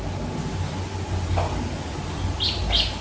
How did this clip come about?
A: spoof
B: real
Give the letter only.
B